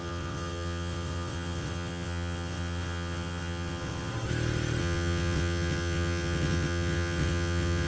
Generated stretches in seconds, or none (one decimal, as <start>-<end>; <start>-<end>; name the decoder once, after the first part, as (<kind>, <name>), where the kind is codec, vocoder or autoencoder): 0.0-4.1 (vocoder, WaveNeXt); 4.8-7.9